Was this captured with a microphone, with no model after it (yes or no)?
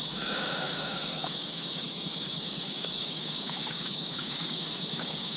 no